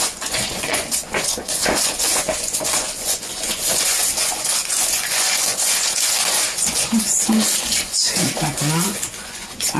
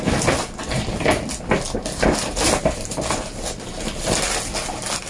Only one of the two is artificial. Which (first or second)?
first